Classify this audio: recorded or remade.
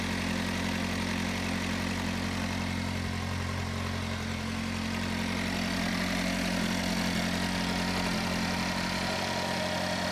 recorded